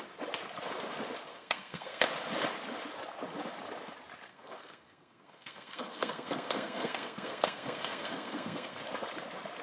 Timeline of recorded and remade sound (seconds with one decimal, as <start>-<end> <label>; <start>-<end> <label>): 0.0-1.3 recorded; 1.3-2.0 remade; 2.0-4.3 recorded; 4.3-8.8 remade; 8.8-9.6 recorded